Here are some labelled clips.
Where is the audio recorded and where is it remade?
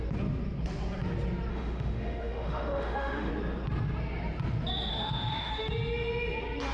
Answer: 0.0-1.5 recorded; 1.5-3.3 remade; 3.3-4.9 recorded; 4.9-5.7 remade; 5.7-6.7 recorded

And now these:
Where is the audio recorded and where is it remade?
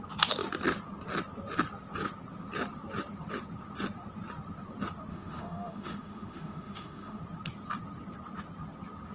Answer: 0.0-5.1 recorded; 5.1-7.2 remade; 7.2-9.1 recorded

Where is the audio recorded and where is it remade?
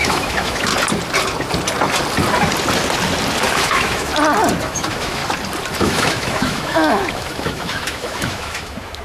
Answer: 0.0-0.7 remade; 0.7-3.5 recorded; 3.5-4.1 remade; 4.1-4.6 recorded; 4.6-5.2 remade; 5.2-5.8 recorded; 5.8-9.0 remade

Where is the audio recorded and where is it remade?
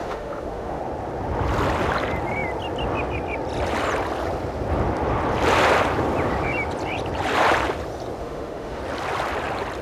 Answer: 0.0-0.8 remade; 0.8-8.2 recorded; 8.2-8.8 remade; 8.8-9.8 recorded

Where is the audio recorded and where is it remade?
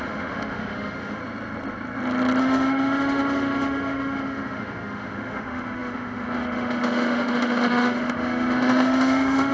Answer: 0.0-1.2 remade; 1.2-2.4 recorded; 2.4-9.5 remade